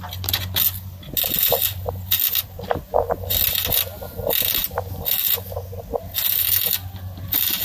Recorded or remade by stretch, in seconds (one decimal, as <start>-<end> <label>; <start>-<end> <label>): 0.0-7.6 recorded